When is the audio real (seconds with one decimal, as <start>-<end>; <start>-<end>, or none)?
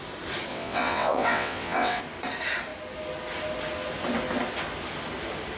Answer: 0.0-0.5; 2.0-5.6